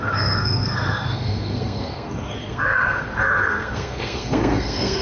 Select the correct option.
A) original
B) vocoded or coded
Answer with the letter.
B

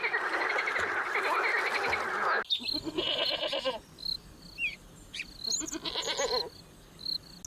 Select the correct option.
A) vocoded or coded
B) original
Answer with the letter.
B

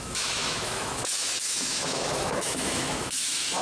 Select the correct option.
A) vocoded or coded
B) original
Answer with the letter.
A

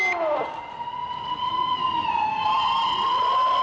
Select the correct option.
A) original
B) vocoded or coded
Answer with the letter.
A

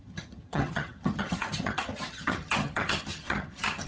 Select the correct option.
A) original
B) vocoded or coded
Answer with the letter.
B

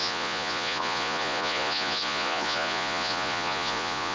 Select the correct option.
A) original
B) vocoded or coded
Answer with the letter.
B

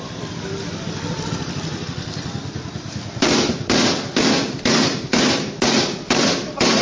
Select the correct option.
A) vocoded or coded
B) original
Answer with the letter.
B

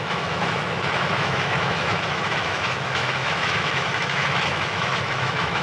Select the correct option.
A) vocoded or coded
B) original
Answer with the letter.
A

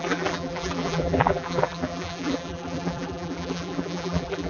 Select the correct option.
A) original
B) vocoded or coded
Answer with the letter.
B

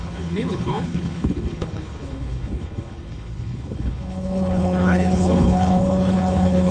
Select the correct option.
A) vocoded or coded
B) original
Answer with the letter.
A